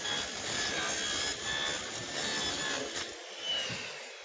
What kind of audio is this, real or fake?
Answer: real